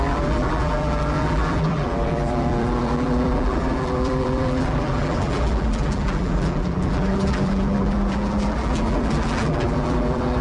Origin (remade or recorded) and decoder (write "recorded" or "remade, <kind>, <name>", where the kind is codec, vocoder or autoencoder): remade, vocoder, BigVGAN v2